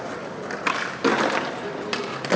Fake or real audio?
real